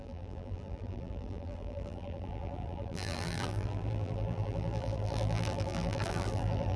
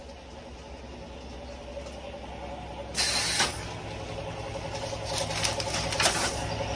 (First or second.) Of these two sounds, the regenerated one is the first